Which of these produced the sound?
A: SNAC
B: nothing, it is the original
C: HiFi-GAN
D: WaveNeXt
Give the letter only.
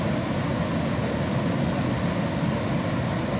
B